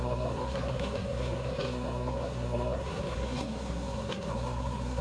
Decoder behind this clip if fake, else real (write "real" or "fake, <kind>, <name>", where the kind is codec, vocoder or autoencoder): fake, codec, SNAC